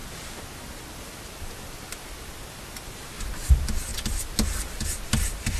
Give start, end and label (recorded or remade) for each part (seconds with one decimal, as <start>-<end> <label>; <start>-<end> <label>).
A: 0.0-5.6 recorded